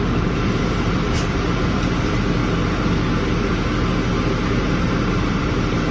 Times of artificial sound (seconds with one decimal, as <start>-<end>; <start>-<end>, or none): 0.0-2.4; 5.2-5.9